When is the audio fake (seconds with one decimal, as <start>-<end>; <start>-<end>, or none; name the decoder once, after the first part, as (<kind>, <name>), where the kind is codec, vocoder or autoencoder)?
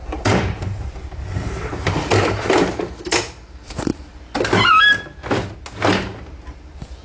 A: 0.0-5.2 (vocoder, BigVGAN v2); 6.4-7.0